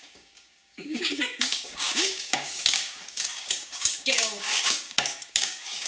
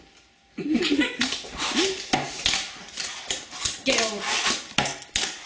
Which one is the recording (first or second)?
second